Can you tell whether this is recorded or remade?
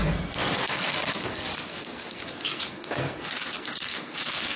remade